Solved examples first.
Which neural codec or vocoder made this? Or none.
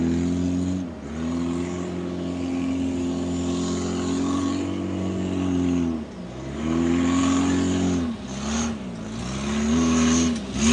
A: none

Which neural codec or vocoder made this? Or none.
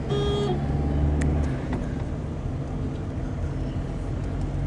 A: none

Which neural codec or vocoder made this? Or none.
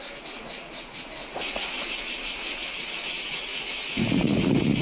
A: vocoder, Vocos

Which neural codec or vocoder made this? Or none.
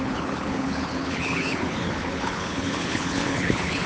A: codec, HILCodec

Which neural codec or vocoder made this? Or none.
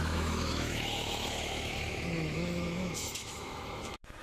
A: autoencoder, DAC-VAE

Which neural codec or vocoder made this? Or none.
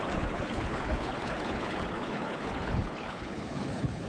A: codec, HILCodec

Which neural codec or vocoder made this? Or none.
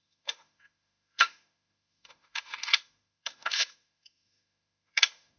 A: autoencoder, DAC-VAE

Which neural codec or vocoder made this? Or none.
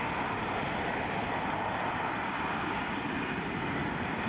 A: none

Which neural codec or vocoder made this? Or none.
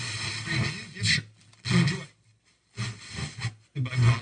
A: none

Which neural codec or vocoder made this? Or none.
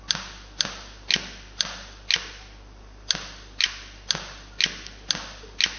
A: none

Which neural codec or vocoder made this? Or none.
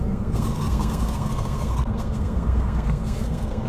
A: codec, SNAC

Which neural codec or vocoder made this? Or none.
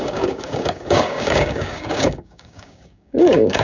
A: codec, DAC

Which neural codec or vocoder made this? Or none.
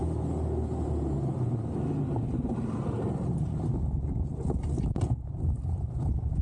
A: none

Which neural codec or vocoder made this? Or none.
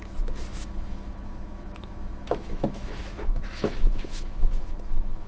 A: autoencoder, DAC-VAE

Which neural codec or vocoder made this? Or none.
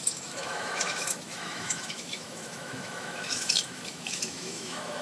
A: autoencoder, DAC-VAE